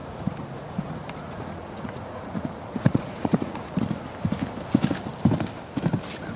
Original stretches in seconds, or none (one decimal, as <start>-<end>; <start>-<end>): 3.8-6.4